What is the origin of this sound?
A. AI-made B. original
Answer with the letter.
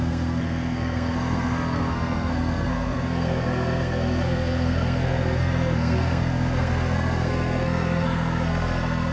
A